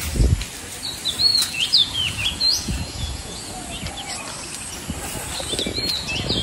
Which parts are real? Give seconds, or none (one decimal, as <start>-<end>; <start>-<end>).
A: 0.0-1.3; 3.4-6.4